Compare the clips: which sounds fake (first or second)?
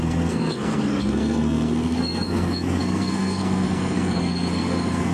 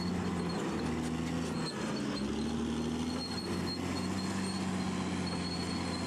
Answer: first